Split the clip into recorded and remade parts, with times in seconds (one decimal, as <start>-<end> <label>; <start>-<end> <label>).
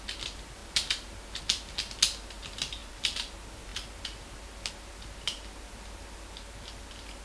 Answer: 0.0-2.8 recorded; 2.8-3.3 remade; 3.3-7.2 recorded